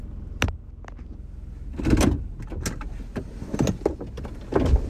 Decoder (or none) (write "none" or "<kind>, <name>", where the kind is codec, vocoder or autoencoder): none